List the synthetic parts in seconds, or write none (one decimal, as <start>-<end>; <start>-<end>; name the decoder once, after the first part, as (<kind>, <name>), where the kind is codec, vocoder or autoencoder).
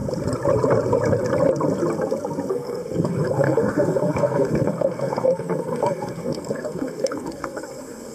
2.5-8.1 (codec, SNAC)